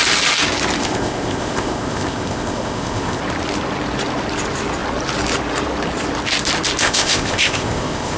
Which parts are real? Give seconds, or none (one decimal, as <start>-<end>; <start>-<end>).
0.0-0.8; 3.2-6.8